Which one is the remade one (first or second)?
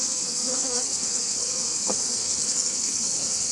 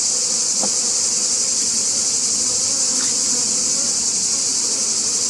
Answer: first